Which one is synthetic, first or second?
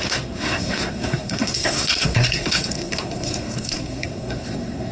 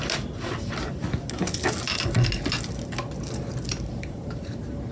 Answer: first